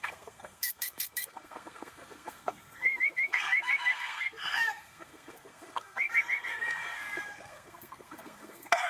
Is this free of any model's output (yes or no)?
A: no